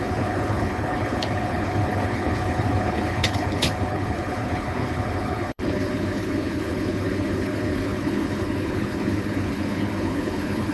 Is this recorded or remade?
remade